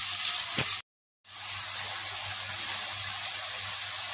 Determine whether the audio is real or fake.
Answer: real